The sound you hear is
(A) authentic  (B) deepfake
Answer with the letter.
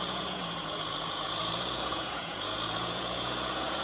B